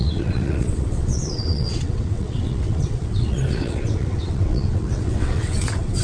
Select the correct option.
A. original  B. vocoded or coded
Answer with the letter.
B